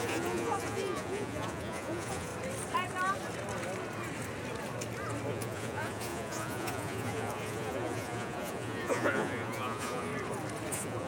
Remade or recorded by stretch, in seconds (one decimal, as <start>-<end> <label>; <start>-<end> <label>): 0.0-2.3 remade; 2.3-5.3 recorded; 5.3-10.1 remade; 10.1-10.7 recorded; 10.7-11.1 remade